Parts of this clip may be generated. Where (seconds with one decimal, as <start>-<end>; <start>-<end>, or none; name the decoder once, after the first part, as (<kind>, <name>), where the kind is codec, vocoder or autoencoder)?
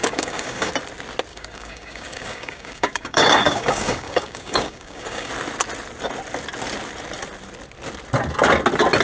0.0-0.7 (codec, DAC); 1.3-5.3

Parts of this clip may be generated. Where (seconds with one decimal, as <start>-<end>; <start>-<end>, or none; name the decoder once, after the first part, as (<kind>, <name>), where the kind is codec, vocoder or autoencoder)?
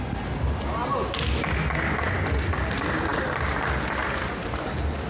none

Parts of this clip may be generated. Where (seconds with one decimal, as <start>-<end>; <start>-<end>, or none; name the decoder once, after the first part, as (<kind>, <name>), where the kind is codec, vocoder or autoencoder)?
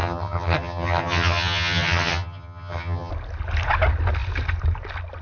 0.0-3.1 (vocoder, HiFi-GAN)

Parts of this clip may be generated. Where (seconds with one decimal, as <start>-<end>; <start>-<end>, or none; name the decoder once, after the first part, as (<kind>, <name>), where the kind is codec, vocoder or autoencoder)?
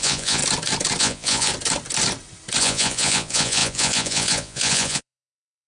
0.0-0.4 (vocoder, Vocos); 1.0-1.5; 2.6-5.7